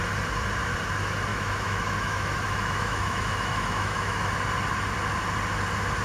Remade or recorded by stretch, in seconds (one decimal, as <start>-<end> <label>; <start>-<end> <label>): 0.0-1.3 recorded; 1.3-4.3 remade; 4.3-6.0 recorded